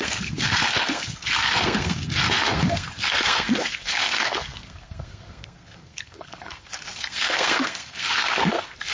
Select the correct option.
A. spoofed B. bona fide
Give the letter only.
A